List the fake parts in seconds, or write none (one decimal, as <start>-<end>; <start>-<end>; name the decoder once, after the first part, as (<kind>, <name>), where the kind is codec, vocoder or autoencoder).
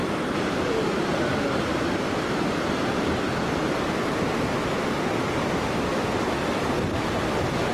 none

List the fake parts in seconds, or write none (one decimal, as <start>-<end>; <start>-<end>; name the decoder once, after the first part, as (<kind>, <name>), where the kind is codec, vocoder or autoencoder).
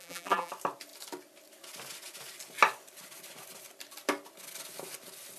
0.0-0.5 (vocoder, BigVGAN v2)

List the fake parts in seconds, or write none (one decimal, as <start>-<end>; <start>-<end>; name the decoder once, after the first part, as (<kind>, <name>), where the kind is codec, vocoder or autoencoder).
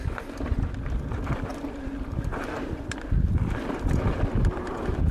1.5-2.7 (vocoder, BigVGAN v2)